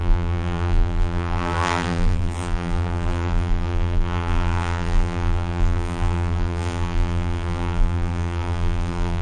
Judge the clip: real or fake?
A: fake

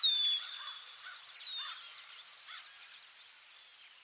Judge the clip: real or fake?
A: real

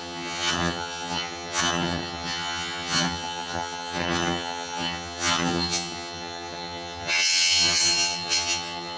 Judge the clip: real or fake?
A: fake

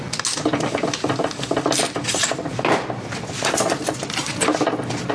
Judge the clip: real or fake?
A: real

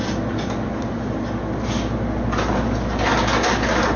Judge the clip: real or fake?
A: real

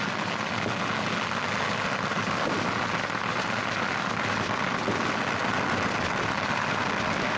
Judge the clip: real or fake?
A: real